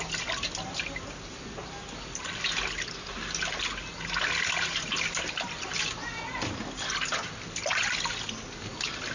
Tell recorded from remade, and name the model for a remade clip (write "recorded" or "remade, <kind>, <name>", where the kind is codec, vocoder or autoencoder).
recorded